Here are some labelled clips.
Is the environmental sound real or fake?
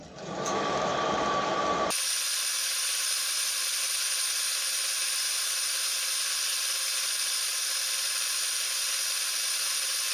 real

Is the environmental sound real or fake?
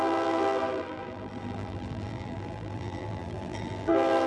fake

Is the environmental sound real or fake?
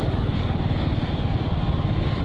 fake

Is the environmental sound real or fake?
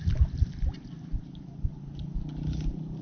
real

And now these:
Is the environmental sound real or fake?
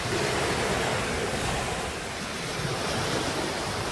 real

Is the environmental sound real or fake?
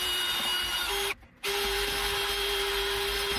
real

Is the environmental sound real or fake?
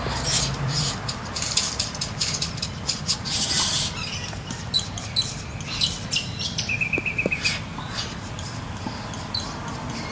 fake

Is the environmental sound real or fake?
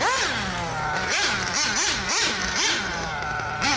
real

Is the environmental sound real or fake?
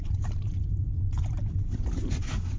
fake